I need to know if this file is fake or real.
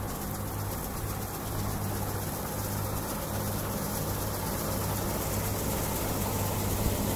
real